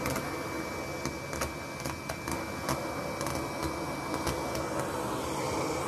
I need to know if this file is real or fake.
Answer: real